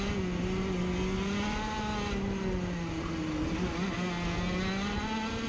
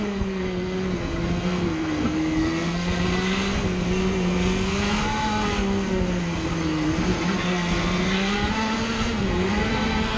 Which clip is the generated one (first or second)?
second